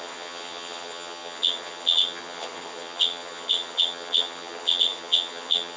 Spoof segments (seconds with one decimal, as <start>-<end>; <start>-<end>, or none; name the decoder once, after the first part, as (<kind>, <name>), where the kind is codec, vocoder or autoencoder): 0.0-5.8 (vocoder, HiFi-GAN)